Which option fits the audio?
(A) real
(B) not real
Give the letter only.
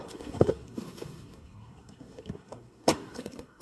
B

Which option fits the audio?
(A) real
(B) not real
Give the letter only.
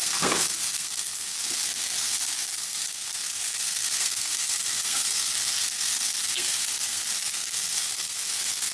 B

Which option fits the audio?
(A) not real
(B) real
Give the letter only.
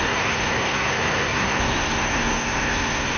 A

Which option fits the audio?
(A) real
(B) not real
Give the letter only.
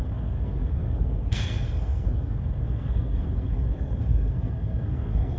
B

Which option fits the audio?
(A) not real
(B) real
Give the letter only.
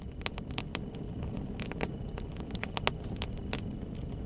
B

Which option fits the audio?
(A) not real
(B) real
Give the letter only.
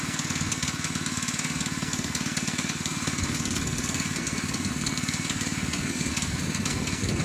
A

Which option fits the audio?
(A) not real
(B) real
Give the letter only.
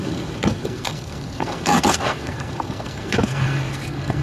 A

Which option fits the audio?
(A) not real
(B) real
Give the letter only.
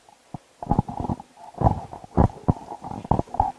B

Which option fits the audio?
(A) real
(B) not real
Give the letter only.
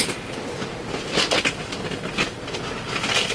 A